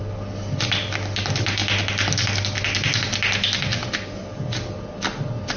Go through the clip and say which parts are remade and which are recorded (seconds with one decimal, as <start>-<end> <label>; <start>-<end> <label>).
0.0-5.6 recorded